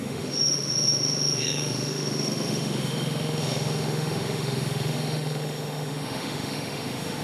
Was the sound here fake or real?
fake